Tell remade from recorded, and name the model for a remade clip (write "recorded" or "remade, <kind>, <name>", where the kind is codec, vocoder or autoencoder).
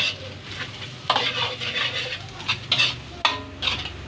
recorded